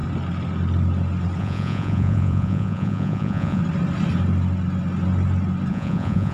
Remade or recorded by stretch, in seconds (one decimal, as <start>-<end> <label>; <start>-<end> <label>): 0.0-1.4 recorded; 1.4-3.6 remade; 3.6-5.7 recorded; 5.7-6.3 remade